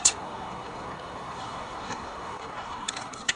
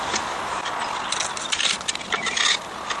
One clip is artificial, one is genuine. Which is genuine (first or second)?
second